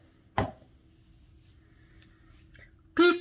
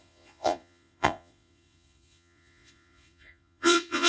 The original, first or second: first